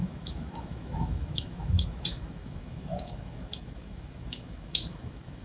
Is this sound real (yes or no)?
no